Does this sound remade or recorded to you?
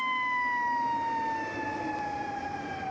recorded